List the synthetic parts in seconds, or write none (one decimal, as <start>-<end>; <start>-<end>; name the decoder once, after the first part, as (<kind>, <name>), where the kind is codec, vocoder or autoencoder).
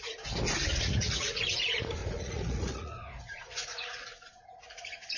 0.7-1.4 (vocoder, Vocos); 2.0-5.2